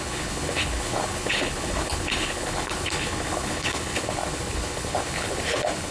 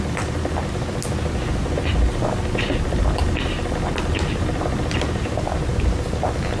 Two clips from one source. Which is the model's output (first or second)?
first